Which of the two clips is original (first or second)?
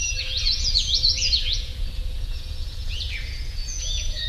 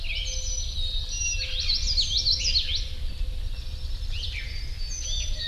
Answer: second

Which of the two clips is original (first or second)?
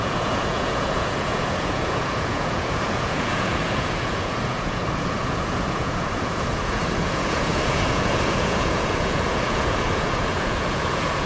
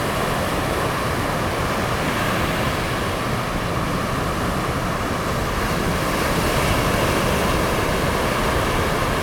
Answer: second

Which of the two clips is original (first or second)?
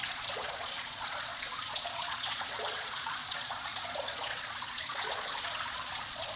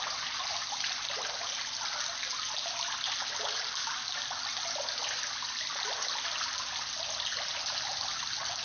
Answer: second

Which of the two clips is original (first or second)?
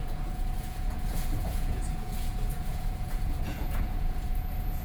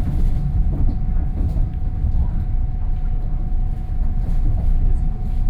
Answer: second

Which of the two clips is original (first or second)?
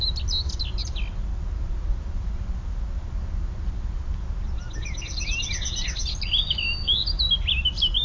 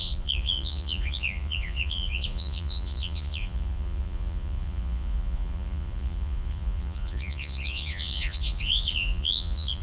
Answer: first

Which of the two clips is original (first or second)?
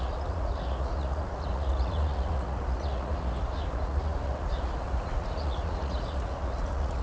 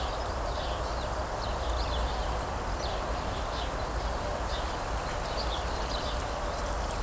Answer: second